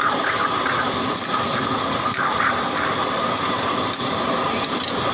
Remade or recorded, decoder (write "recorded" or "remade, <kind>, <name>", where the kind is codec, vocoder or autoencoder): recorded